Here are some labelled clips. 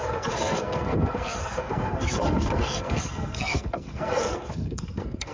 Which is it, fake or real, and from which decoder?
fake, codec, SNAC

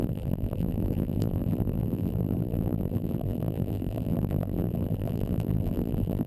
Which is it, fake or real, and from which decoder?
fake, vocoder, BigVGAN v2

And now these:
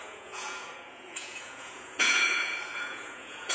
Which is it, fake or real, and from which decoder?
fake, vocoder, Vocos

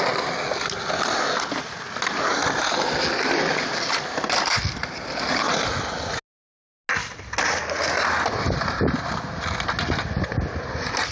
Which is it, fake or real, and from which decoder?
real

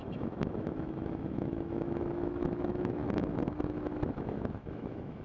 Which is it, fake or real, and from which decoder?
fake, autoencoder, DAC-VAE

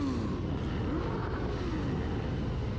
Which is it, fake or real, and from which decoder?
real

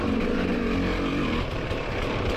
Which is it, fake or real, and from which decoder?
real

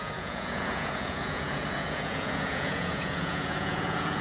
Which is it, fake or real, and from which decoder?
fake, vocoder, Vocos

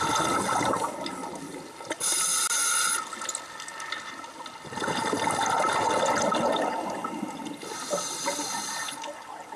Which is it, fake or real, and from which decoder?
real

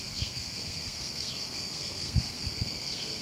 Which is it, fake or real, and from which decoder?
fake, codec, SNAC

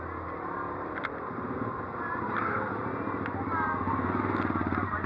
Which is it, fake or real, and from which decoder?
real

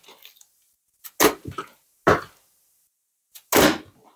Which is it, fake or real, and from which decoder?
real